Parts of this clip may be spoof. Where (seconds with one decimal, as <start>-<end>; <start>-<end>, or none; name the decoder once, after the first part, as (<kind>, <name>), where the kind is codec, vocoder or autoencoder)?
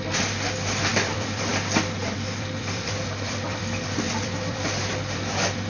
0.9-1.5 (vocoder, BigVGAN v2); 2.0-5.7